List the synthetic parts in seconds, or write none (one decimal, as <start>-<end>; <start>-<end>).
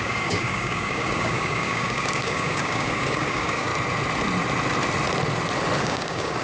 0.0-3.7; 5.8-6.4